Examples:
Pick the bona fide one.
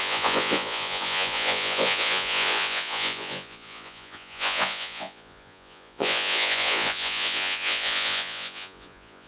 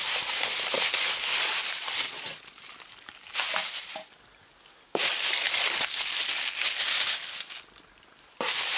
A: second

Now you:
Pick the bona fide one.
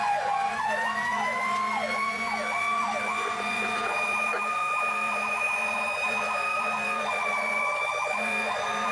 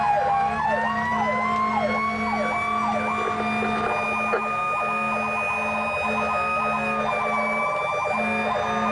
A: second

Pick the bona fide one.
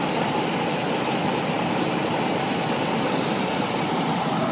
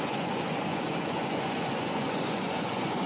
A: first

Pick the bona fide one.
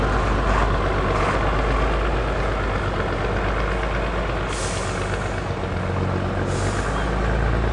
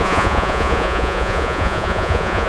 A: first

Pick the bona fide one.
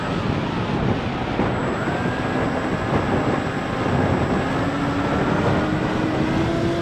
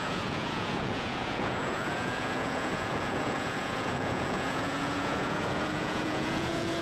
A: first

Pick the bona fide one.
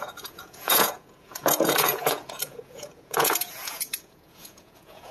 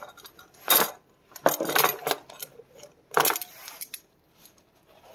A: second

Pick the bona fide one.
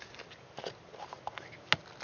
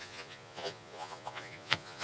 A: first